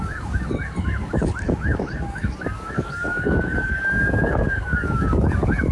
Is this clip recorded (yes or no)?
no